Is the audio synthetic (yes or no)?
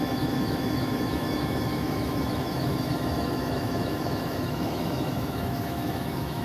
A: yes